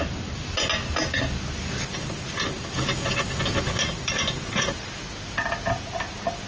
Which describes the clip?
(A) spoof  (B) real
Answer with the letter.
B